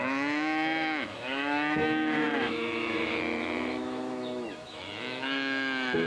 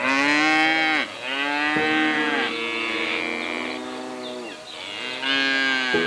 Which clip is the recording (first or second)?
second